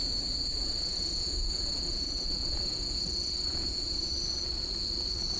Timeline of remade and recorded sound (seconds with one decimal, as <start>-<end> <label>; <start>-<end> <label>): 0.0-3.0 remade; 3.0-3.5 recorded; 3.5-4.1 remade; 4.1-5.4 recorded